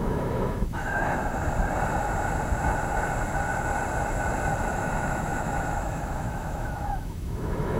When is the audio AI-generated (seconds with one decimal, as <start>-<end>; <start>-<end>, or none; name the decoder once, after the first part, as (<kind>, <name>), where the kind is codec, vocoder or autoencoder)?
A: 0.0-1.2 (autoencoder, DAC-VAE); 4.7-7.8